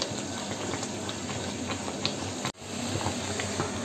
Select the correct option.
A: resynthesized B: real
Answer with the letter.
B